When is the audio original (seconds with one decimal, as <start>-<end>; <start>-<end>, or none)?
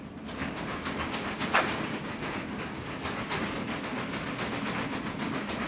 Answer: 0.0-0.4; 3.2-5.7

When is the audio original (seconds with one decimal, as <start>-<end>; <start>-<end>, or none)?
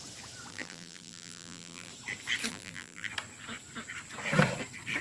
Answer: 0.0-0.5; 1.9-2.5; 3.1-5.0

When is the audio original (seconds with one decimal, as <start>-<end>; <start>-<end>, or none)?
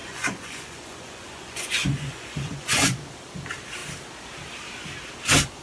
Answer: 3.0-5.6